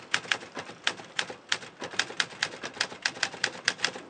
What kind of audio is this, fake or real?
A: real